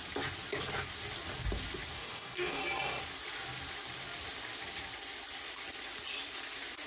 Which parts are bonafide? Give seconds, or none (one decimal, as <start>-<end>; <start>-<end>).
0.0-1.9; 2.6-6.9